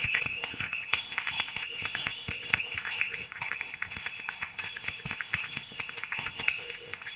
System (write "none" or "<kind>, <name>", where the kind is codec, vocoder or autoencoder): codec, ZipCodec